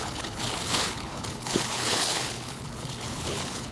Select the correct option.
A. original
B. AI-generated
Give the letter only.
B